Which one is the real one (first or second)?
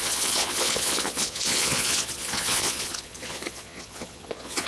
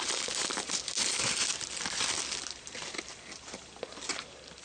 second